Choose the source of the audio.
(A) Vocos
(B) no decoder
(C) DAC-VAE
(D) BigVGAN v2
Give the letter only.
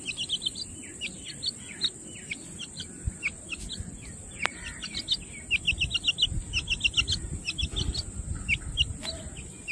B